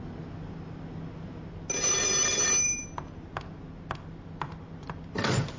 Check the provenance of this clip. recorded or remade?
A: recorded